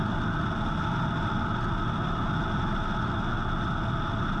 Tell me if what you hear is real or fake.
real